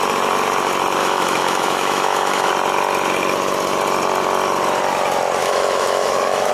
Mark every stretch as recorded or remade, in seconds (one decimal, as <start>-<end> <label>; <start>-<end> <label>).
0.0-1.0 recorded; 1.0-2.5 remade; 2.5-5.4 recorded; 5.4-6.5 remade